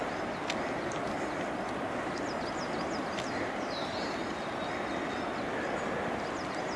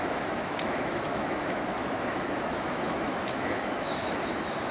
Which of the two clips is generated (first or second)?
second